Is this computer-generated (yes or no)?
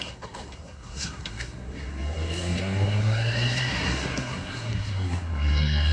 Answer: yes